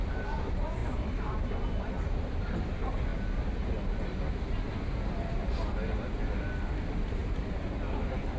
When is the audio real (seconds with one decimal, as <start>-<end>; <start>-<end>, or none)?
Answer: 0.0-0.8; 1.3-7.2; 8.0-8.4